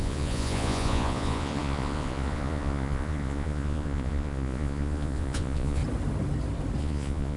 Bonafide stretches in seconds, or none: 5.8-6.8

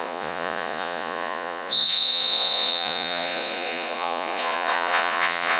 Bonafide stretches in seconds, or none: none

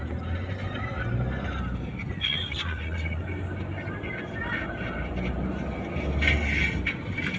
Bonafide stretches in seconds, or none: 0.0-2.0; 3.2-7.4

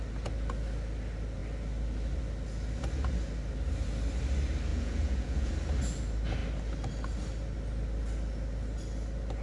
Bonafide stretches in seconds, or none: 0.0-4.7; 5.5-9.4

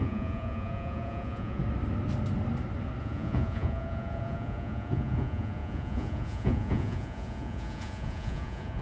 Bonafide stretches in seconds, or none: 1.6-3.0

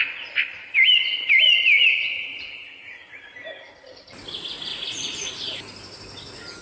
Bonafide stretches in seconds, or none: 0.0-4.7; 5.3-6.6

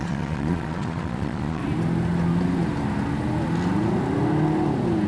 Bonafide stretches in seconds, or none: 1.6-5.1

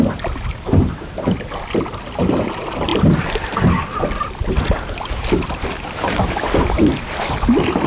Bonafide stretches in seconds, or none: 0.0-7.9